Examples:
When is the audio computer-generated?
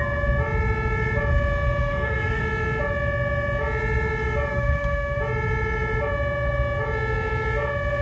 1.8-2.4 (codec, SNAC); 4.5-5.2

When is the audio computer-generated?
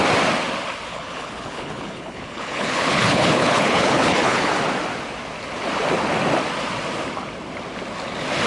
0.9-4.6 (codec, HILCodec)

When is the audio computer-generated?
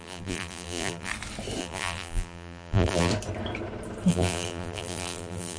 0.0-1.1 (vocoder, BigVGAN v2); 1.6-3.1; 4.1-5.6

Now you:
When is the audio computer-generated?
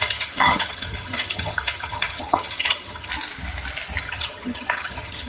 0.0-3.1 (vocoder, HiFi-GAN); 4.0-5.3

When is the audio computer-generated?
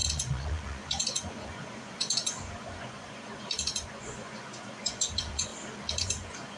0.0-5.5 (vocoder, Vocos); 6.0-6.6